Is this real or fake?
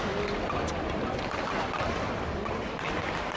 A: real